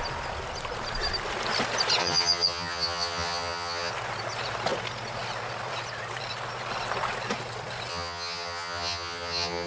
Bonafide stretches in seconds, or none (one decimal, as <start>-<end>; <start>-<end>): 0.0-2.0; 3.9-7.9